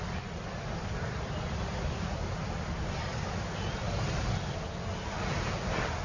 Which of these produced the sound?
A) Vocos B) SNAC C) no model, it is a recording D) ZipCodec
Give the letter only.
C